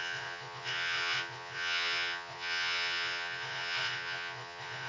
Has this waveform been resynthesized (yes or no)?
yes